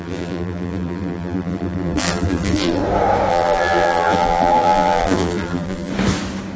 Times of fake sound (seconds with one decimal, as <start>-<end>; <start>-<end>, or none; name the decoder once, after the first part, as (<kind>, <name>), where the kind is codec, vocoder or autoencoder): 0.0-2.8 (vocoder, BigVGAN v2); 3.3-5.9